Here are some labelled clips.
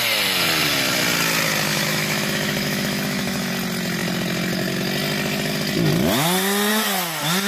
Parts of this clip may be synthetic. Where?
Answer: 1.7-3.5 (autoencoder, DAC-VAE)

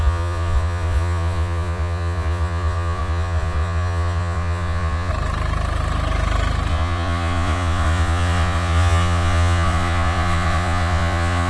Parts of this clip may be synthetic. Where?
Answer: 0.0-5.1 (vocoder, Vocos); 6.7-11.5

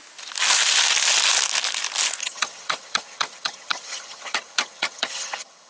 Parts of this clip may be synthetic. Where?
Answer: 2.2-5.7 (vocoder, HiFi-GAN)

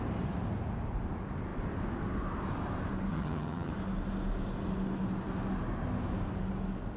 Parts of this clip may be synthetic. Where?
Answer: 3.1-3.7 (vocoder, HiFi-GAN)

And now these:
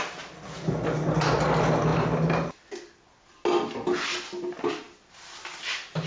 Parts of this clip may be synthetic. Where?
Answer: none

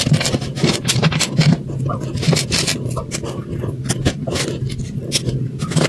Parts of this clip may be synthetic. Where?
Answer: none

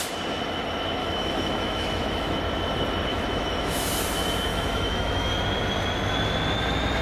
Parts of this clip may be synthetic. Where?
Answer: 1.0-2.4 (autoencoder, DAC-VAE); 3.1-3.9; 4.5-5.3

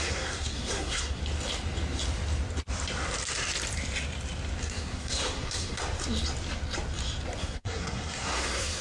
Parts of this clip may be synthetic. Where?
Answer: 0.0-1.2 (codec, SNAC); 4.6-5.8; 7.4-8.8